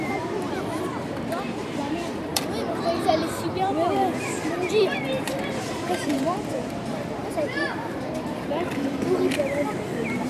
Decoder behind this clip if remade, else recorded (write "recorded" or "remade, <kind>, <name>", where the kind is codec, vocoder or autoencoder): remade, vocoder, BigVGAN v2